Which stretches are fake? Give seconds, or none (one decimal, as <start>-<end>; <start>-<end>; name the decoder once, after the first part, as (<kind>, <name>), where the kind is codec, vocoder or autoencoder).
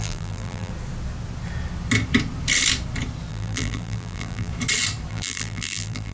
0.0-0.7 (vocoder, BigVGAN v2); 3.3-4.5; 5.1-6.1